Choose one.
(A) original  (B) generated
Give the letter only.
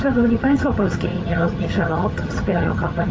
B